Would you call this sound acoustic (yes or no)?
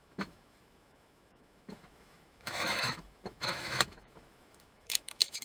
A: no